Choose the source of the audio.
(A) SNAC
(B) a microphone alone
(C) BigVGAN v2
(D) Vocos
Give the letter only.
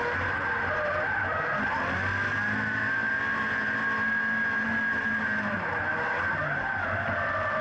B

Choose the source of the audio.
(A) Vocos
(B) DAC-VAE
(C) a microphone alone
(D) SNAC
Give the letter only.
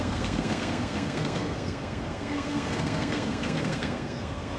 D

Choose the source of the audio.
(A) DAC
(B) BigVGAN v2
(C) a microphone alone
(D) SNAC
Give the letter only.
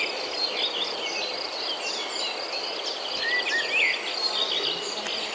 C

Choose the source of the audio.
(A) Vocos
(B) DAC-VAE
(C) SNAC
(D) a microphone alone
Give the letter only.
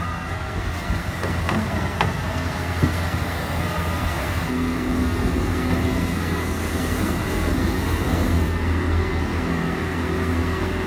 C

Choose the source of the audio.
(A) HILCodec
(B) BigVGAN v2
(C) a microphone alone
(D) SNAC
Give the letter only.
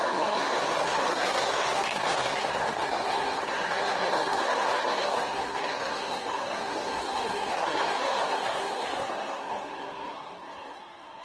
D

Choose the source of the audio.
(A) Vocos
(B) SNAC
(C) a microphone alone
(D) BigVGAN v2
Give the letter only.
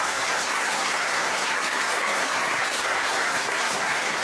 B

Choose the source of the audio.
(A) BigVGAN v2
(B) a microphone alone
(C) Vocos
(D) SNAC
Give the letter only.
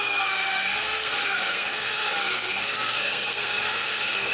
D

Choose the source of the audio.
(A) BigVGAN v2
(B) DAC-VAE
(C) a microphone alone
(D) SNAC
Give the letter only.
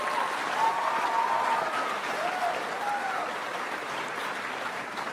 C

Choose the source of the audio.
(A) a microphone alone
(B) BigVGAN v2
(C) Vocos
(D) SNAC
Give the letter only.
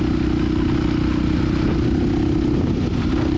A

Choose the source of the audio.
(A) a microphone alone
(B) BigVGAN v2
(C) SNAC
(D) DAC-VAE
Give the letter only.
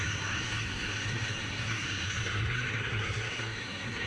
C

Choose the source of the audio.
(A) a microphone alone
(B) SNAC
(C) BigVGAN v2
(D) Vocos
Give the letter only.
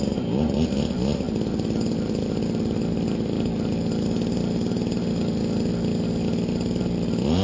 A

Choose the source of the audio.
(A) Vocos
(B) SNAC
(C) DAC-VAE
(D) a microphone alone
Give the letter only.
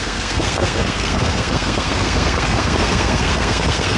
B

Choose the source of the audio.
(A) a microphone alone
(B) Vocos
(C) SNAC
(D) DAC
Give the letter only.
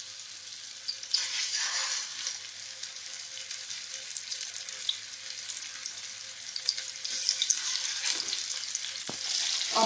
A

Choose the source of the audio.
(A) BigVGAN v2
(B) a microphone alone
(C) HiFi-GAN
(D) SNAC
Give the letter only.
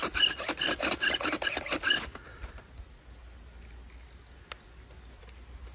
B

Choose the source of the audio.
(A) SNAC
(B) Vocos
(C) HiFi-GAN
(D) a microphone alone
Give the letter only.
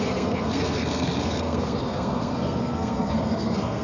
A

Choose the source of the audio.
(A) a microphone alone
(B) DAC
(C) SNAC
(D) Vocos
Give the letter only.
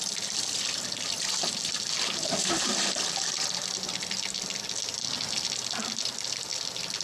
A